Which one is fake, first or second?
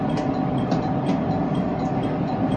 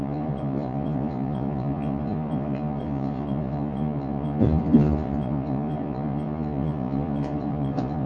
second